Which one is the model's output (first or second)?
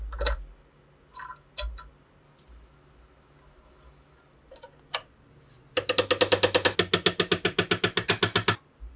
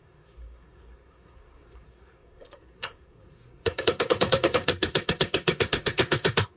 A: second